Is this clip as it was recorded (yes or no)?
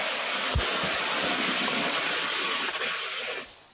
yes